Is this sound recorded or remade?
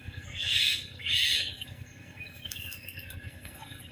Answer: remade